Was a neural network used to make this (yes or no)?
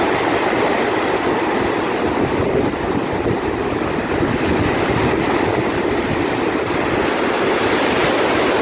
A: no